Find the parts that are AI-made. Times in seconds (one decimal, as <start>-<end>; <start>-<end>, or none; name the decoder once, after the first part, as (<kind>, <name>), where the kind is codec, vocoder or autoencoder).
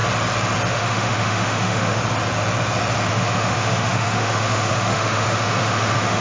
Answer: 0.7-2.0 (autoencoder, DAC-VAE); 3.1-6.2